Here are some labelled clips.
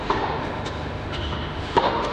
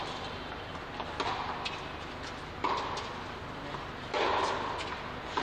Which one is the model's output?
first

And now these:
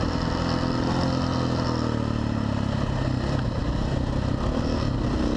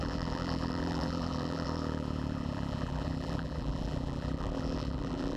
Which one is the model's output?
second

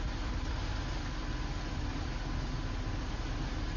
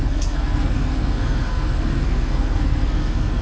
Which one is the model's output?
second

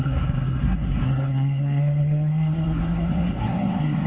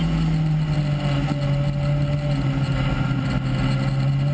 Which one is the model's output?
first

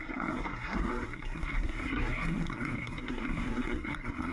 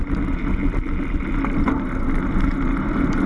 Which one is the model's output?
first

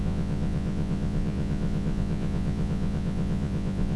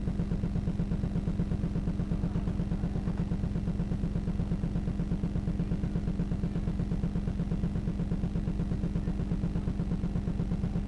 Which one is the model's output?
first